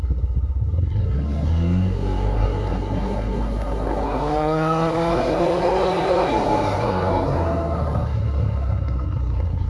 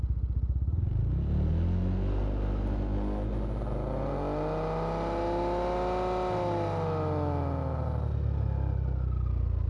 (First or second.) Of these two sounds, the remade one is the first